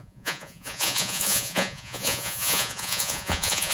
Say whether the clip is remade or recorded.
remade